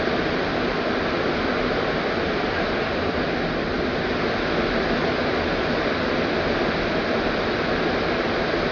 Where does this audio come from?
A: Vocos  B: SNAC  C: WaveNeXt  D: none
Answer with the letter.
D